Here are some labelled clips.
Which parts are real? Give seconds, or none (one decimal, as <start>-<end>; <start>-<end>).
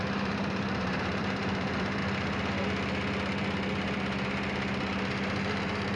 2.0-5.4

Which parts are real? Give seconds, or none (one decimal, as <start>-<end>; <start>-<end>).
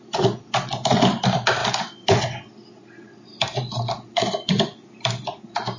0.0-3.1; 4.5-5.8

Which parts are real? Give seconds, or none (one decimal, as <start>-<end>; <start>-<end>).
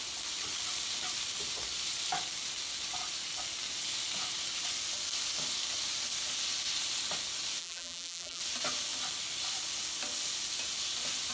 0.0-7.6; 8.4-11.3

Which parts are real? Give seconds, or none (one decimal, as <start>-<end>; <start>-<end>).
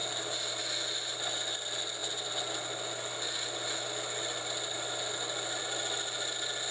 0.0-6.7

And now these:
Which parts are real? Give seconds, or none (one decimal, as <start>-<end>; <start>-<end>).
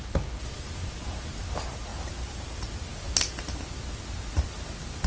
0.0-1.9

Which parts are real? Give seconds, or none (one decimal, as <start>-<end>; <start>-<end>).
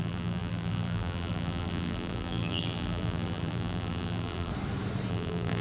4.5-5.1